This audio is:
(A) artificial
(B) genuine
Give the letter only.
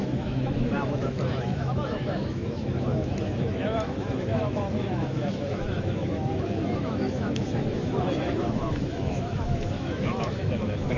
A